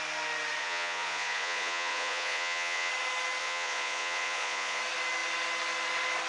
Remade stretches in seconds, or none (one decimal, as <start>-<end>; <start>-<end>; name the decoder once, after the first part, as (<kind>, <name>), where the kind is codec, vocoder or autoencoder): 0.6-2.9 (vocoder, Vocos); 3.4-4.8